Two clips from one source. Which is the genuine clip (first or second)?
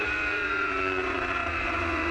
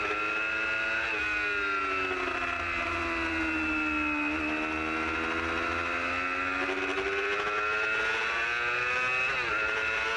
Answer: second